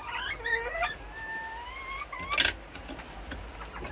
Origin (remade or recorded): recorded